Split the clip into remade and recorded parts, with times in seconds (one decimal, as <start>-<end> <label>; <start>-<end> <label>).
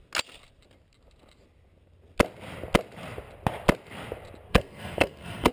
0.0-4.5 recorded; 4.5-5.5 remade